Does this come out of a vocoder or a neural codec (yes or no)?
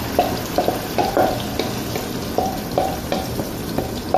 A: no